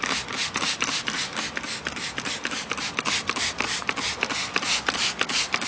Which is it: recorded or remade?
recorded